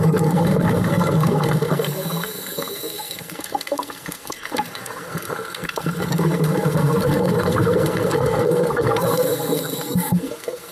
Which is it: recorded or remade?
remade